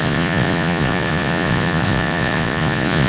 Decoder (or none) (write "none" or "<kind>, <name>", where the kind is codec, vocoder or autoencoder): vocoder, Vocos